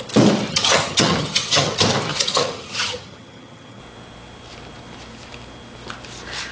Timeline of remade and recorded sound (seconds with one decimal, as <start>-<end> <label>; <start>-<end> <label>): 0.0-0.5 recorded; 0.5-1.7 remade; 1.7-2.1 recorded; 2.1-3.8 remade; 3.8-6.5 recorded